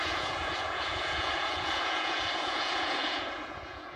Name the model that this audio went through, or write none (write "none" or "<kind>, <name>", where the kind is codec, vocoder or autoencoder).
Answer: vocoder, Vocos